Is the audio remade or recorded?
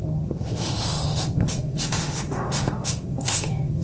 remade